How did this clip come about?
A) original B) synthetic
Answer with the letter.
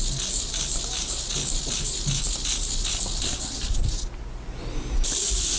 A